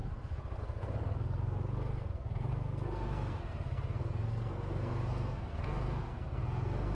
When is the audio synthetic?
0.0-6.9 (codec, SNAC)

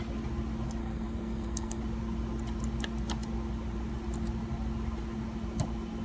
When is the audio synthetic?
0.8-1.8 (codec, SNAC)

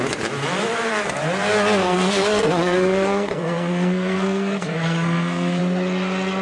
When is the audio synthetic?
1.8-5.6 (codec, SNAC)

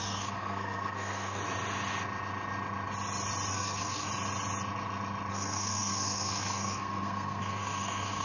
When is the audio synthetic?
0.0-1.4 (codec, SNAC); 3.5-4.1; 5.3-8.2

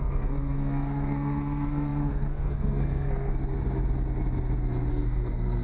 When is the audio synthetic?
0.0-3.3 (codec, SNAC); 4.9-5.6